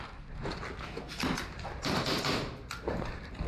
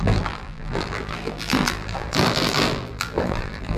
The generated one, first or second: second